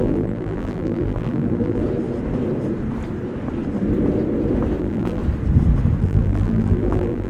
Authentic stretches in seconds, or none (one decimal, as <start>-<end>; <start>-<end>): 1.8-4.8; 5.2-6.0